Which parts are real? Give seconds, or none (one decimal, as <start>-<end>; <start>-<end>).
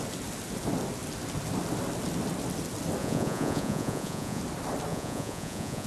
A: 0.0-3.0; 4.4-4.9